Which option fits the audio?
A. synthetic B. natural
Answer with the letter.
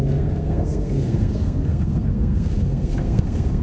A